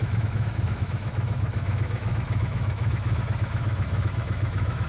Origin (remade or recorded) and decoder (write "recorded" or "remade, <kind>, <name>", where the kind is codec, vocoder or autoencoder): remade, autoencoder, DAC-VAE